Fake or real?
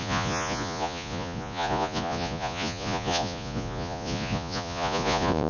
fake